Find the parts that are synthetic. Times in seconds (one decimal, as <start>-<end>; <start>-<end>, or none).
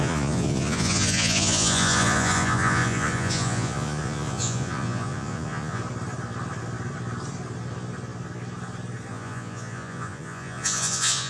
0.0-5.8; 9.1-11.3